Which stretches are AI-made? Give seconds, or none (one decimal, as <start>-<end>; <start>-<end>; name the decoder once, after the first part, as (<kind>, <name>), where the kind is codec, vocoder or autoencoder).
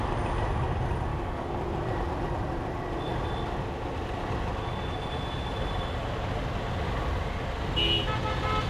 1.1-1.6 (codec, DAC)